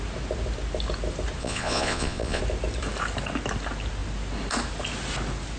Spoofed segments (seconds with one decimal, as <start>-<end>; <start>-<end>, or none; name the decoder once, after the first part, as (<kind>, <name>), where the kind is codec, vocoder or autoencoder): 1.4-2.4 (vocoder, Vocos)